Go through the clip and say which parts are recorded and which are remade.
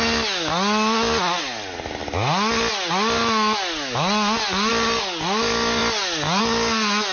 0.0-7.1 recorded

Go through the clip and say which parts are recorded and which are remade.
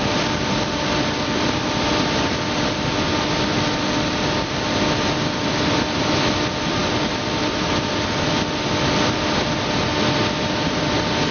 0.0-11.3 recorded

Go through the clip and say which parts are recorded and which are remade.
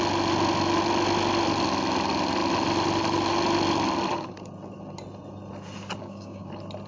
0.0-6.0 recorded; 6.0-6.5 remade; 6.5-6.9 recorded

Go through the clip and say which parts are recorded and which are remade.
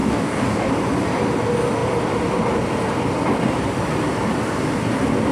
0.0-0.7 remade; 0.7-5.3 recorded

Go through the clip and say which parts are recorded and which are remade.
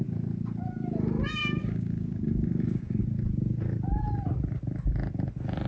0.0-1.4 recorded; 1.4-3.0 remade; 3.0-5.7 recorded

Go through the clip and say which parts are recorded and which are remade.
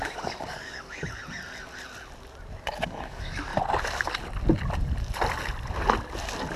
0.0-1.2 remade; 1.2-2.6 recorded; 2.6-3.5 remade; 3.5-6.6 recorded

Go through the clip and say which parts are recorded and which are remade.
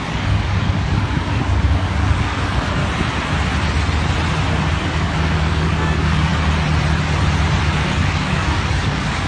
0.0-2.8 remade; 2.8-4.8 recorded; 4.8-6.3 remade; 6.3-7.6 recorded; 7.6-9.3 remade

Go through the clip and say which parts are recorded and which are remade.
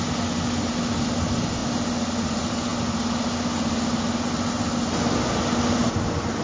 0.0-6.4 recorded